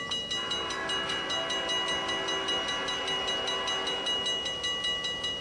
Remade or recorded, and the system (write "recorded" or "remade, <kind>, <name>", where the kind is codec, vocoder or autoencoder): recorded